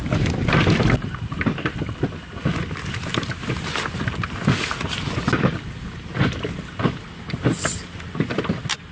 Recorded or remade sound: recorded